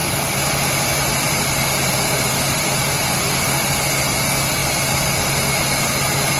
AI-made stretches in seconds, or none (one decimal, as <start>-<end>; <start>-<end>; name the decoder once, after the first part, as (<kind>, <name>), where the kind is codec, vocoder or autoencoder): 0.0-3.8 (vocoder, BigVGAN v2)